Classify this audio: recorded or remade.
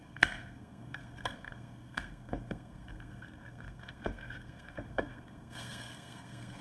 remade